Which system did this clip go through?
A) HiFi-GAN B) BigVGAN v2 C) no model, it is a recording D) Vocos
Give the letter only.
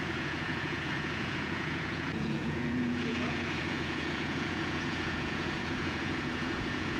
D